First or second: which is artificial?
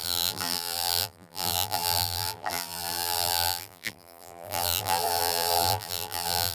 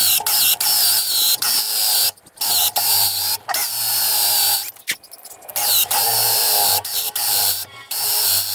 first